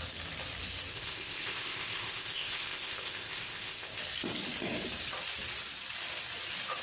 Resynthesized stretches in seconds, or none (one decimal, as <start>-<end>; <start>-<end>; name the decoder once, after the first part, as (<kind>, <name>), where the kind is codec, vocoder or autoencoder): 0.9-4.0 (codec, ZipCodec)